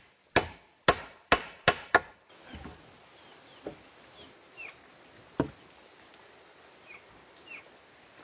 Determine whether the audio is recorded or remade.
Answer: recorded